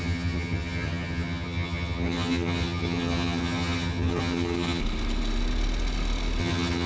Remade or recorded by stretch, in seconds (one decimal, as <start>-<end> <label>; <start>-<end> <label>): 0.0-4.8 remade; 4.8-6.4 recorded; 6.4-6.9 remade